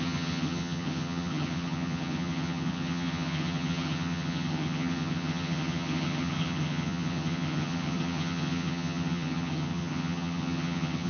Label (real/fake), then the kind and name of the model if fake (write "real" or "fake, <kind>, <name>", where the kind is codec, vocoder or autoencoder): fake, vocoder, HiFi-GAN